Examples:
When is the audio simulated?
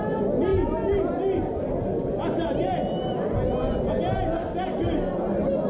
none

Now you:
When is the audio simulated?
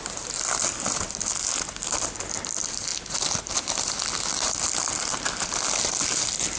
none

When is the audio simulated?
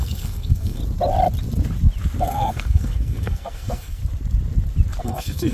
0.0-0.8 (codec, SNAC); 2.2-4.0; 5.0-5.5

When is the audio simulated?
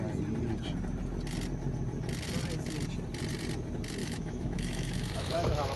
4.0-5.8 (autoencoder, DAC-VAE)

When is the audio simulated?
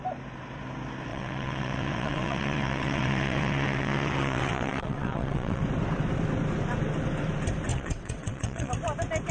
1.1-5.6 (vocoder, WaveNeXt); 7.7-8.7